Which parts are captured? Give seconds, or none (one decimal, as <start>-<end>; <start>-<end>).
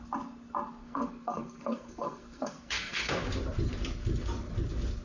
0.0-0.8; 3.1-5.0